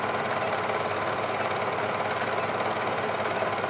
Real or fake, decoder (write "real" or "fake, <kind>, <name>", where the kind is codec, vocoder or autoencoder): real